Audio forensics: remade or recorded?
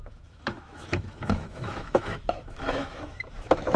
remade